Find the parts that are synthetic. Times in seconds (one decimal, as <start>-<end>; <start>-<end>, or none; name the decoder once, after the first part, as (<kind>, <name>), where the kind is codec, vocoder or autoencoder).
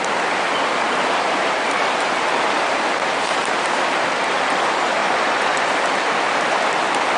5.0-5.7 (vocoder, Vocos)